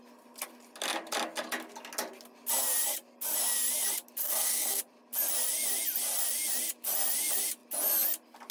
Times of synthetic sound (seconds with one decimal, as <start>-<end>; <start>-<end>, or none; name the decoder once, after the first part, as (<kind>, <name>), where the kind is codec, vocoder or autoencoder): 4.2-4.8 (codec, SNAC)